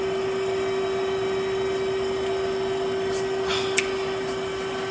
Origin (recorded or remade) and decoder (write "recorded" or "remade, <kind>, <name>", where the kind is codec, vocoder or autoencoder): recorded